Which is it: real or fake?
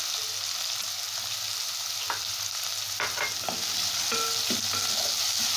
real